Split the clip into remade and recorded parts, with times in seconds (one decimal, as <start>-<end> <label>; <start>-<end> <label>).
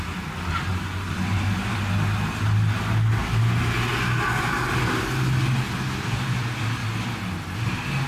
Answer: 0.0-8.1 recorded